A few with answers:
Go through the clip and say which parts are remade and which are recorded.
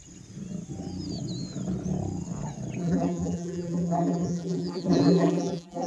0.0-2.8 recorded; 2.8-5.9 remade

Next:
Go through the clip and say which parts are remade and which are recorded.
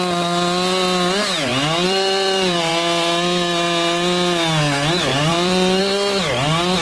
0.0-1.5 recorded; 1.5-2.7 remade; 2.7-5.1 recorded; 5.1-5.8 remade; 5.8-6.8 recorded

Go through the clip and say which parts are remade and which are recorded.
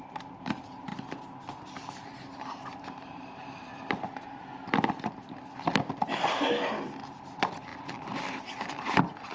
0.0-0.9 remade; 0.9-5.0 recorded; 5.0-9.3 remade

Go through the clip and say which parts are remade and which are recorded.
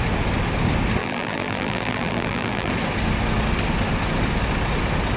0.0-1.0 recorded; 1.0-2.7 remade; 2.7-5.2 recorded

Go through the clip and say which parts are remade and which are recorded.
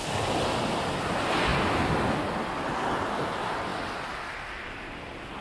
0.0-5.4 recorded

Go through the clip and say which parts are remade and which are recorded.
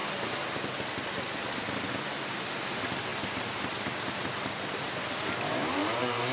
0.0-5.8 recorded; 5.8-6.3 remade